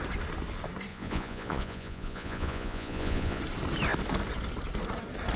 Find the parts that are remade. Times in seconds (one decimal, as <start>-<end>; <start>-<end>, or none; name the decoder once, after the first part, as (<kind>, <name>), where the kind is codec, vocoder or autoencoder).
0.9-3.4 (vocoder, Vocos)